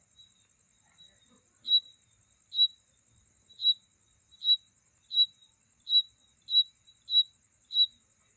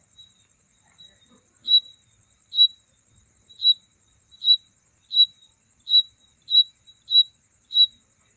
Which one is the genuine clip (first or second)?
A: first